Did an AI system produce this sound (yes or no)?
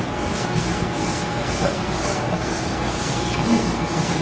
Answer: yes